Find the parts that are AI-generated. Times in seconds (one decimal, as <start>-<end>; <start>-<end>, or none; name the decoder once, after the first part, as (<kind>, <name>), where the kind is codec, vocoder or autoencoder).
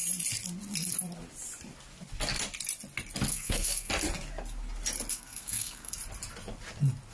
3.3-3.9 (codec, SNAC); 5.1-5.9